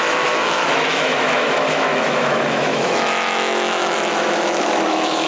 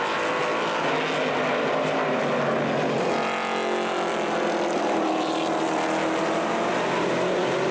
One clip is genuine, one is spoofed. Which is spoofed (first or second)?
first